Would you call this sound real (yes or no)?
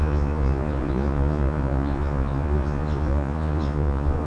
no